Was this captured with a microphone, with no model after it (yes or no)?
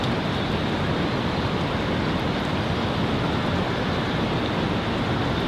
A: yes